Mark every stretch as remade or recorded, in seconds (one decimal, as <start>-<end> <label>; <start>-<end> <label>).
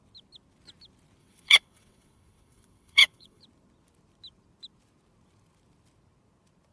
0.0-1.2 recorded; 1.2-3.4 remade; 3.4-6.7 recorded